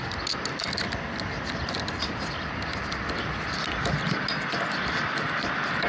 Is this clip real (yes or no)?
yes